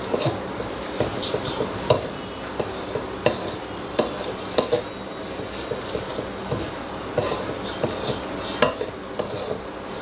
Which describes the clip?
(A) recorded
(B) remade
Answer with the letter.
A